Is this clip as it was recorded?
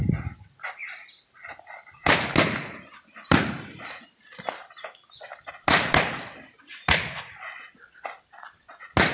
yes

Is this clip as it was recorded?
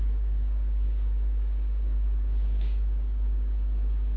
no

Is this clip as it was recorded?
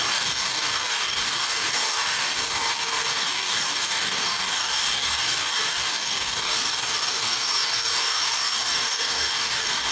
no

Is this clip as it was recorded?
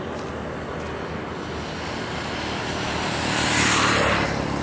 yes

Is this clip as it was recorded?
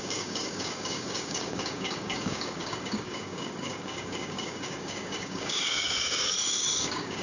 no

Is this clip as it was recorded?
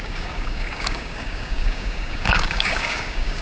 no